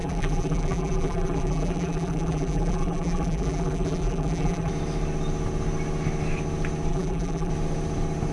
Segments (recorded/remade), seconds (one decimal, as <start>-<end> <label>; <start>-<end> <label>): 0.0-4.7 remade; 4.7-6.9 recorded; 6.9-7.5 remade; 7.5-8.3 recorded